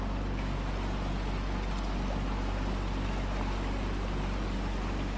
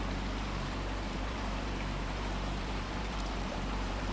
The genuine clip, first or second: first